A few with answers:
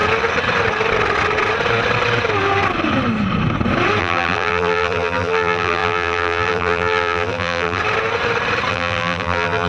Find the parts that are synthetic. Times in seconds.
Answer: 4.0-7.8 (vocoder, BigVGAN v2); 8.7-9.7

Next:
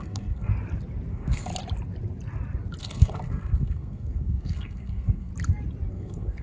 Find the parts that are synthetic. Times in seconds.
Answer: 0.0-0.5 (codec, SNAC); 1.1-1.5; 2.8-5.3; 5.9-6.4

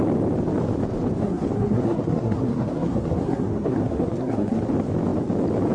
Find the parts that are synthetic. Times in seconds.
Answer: 1.2-4.6 (codec, SNAC)

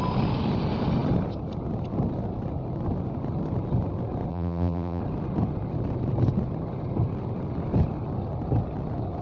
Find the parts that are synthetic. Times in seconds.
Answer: 4.3-5.0 (vocoder, BigVGAN v2)

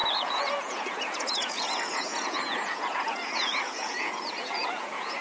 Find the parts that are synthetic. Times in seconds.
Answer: 0.0-5.2 (vocoder, Vocos)

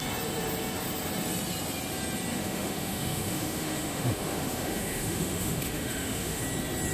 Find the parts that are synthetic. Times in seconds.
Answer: 2.3-6.4 (autoencoder, DAC-VAE)

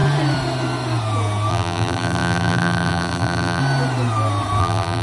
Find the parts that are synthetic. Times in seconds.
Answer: 1.5-3.6 (vocoder, BigVGAN v2); 4.6-5.0

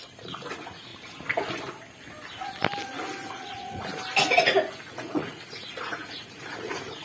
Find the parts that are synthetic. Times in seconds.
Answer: 0.0-0.9 (vocoder, Vocos); 3.3-3.9; 4.9-7.0